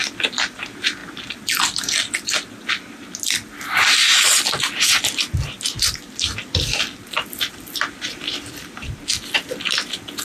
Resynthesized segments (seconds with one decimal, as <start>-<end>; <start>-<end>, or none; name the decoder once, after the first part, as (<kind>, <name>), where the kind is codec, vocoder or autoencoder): 0.0-1.0 (vocoder, BigVGAN v2); 6.1-10.2